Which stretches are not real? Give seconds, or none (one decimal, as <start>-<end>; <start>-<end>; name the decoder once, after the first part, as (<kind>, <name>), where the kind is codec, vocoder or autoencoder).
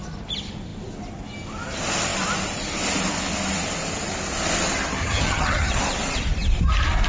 5.0-5.8 (vocoder, HiFi-GAN)